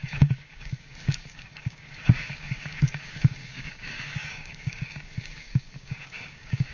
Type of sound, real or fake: fake